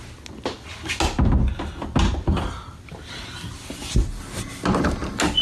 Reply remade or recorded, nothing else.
recorded